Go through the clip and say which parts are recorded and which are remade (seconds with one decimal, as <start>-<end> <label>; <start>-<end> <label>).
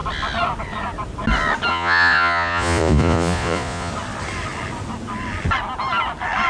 0.0-1.7 recorded; 1.7-3.9 remade; 3.9-6.5 recorded